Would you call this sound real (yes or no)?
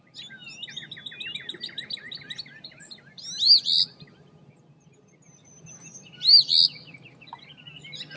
yes